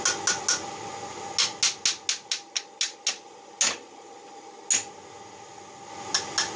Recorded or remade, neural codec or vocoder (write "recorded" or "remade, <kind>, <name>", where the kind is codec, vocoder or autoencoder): recorded